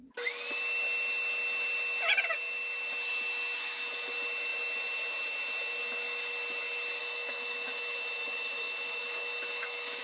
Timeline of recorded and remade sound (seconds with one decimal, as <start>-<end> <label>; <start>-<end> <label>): 0.0-7.0 recorded; 7.0-10.0 remade